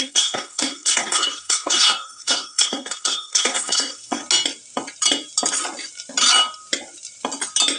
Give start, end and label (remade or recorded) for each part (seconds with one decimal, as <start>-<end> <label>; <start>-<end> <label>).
0.0-4.2 remade; 4.2-7.8 recorded